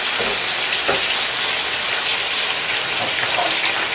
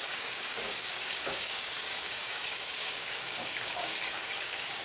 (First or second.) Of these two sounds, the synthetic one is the second